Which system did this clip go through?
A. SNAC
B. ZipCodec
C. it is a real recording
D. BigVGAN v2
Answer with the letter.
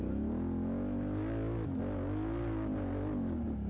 C